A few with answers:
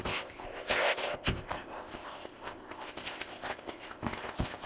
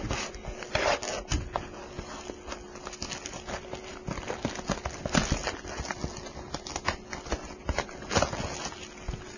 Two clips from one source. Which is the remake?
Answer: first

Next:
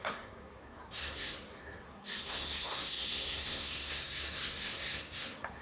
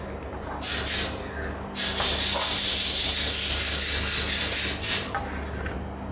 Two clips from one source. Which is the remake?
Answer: first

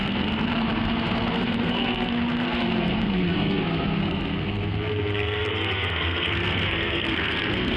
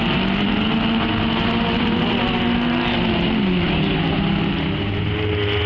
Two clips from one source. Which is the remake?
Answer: first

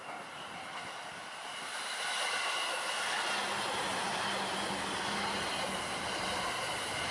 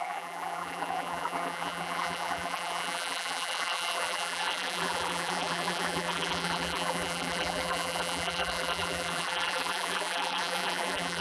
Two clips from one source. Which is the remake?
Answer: second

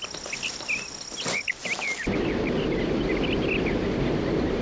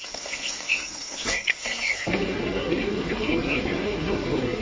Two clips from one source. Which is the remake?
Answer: second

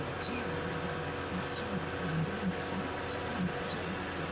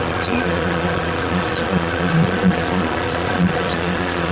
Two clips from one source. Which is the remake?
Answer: second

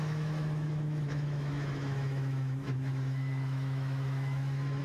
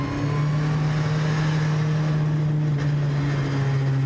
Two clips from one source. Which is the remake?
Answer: first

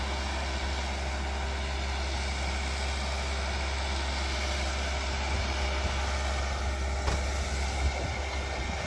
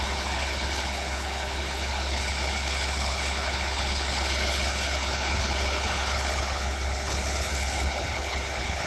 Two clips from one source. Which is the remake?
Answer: second